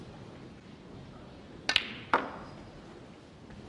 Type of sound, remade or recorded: recorded